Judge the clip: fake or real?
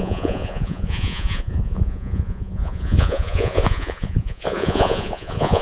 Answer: fake